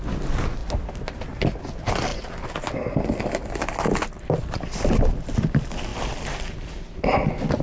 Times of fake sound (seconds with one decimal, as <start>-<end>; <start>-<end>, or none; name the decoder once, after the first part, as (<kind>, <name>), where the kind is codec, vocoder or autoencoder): none